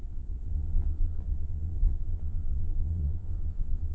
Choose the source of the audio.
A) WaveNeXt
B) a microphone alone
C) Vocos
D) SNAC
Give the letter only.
C